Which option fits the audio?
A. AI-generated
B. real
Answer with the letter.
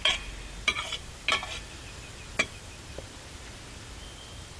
B